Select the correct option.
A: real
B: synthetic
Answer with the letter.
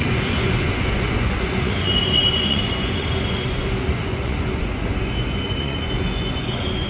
B